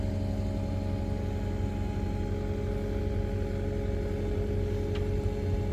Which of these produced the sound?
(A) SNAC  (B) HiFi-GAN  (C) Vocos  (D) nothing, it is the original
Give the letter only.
D